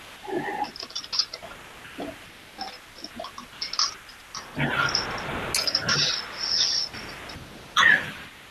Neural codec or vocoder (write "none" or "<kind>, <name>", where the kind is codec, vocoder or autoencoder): none